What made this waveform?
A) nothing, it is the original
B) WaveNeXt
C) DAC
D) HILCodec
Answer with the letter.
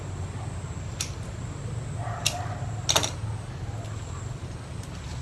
A